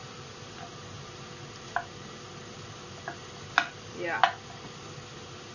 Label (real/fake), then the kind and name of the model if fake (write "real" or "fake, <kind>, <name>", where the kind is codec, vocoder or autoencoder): real